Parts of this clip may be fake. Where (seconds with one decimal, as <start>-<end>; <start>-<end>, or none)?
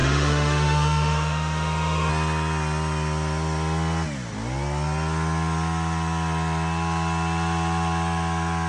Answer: 0.0-2.1